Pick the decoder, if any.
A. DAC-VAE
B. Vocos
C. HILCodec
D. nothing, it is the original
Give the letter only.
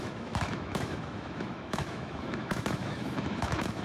A